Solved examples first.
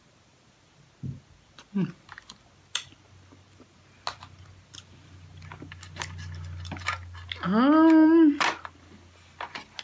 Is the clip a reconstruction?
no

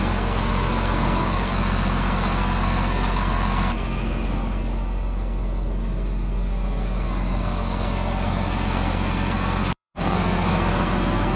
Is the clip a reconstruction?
yes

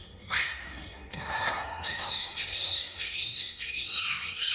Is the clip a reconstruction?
yes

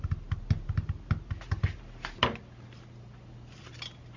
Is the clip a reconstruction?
no